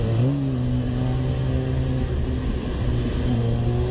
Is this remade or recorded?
recorded